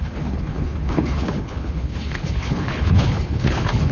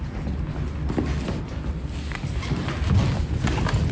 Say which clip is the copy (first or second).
first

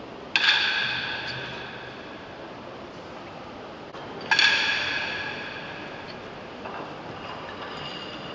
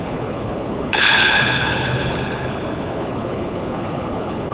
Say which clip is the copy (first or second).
second